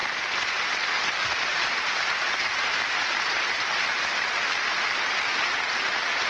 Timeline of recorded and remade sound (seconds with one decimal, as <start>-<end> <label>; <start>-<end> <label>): 0.0-0.7 remade; 0.7-1.5 recorded; 1.5-5.3 remade; 5.3-6.3 recorded